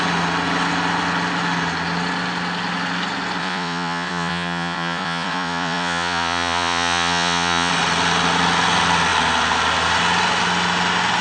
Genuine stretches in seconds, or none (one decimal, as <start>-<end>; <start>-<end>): 0.0-3.4; 7.7-11.2